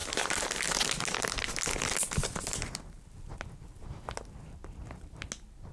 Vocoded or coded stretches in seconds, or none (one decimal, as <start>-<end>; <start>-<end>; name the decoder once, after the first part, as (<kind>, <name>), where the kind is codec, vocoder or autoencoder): none

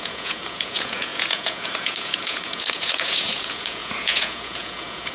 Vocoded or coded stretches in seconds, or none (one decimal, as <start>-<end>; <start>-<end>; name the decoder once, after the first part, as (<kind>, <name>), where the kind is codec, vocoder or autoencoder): 0.0-5.1 (vocoder, Vocos)

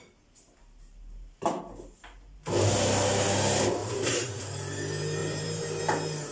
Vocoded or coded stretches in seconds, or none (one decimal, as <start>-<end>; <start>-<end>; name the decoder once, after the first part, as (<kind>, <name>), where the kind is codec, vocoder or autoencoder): 0.6-1.6 (vocoder, BigVGAN v2); 3.8-4.4; 5.2-5.8

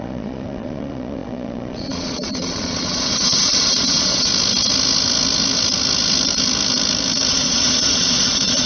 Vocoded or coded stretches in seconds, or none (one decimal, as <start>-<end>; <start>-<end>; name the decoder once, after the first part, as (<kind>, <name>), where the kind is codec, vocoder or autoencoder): 0.0-4.3 (vocoder, Vocos); 7.3-8.7